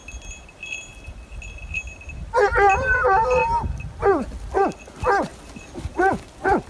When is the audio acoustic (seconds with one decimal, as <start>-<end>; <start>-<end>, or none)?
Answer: 0.0-6.7